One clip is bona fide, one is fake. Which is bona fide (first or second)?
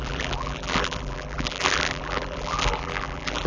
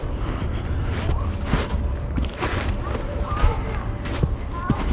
second